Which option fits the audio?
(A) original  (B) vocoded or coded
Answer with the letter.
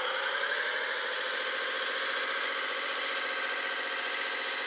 B